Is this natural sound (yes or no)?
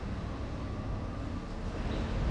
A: yes